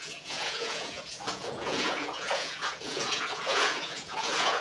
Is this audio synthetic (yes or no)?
yes